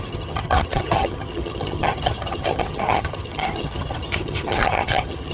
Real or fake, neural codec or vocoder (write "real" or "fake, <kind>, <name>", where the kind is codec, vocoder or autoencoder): fake, vocoder, HiFi-GAN